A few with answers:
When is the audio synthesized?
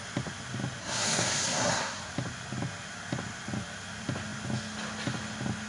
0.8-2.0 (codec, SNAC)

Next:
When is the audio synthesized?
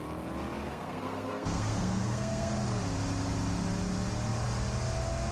0.6-2.5 (codec, SNAC)